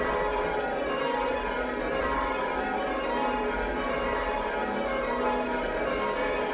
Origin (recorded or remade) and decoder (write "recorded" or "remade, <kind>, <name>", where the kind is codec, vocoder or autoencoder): remade, vocoder, BigVGAN v2